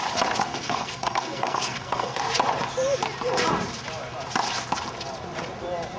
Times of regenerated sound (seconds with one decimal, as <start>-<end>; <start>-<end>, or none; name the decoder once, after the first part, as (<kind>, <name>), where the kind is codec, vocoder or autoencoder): 0.5-2.2 (codec, SNAC)